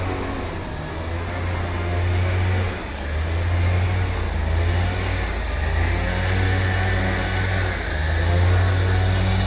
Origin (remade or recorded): recorded